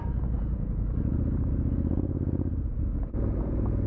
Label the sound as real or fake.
fake